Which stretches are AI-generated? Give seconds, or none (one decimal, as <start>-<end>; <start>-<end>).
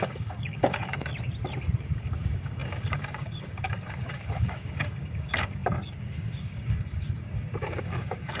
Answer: 0.0-1.1; 2.0-8.4